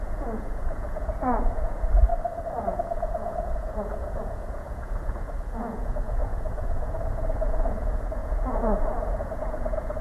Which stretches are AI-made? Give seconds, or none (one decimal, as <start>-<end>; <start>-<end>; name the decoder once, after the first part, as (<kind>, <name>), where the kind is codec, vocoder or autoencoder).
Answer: 0.0-2.1 (vocoder, Vocos); 2.6-10.0